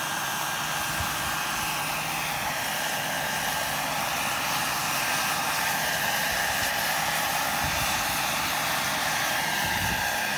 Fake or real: real